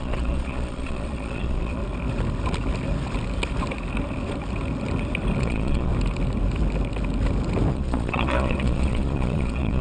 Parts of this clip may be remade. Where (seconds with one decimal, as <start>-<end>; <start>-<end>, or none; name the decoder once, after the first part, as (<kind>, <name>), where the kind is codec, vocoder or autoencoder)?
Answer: 0.0-1.8 (vocoder, Vocos); 5.4-5.9; 7.7-9.8